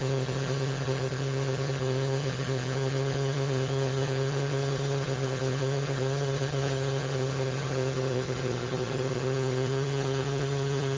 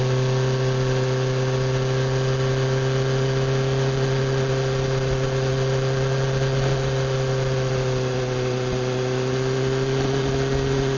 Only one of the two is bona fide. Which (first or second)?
second